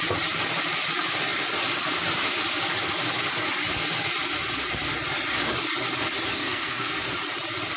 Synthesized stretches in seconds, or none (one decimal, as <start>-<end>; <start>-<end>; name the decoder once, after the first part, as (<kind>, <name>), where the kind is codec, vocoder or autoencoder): 6.3-6.9 (codec, SNAC)